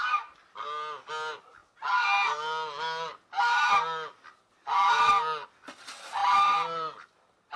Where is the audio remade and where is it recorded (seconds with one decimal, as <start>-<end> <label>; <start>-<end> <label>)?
0.0-7.6 recorded